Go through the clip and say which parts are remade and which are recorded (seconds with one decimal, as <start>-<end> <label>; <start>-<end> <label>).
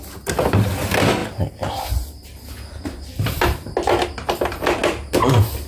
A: 0.0-5.7 recorded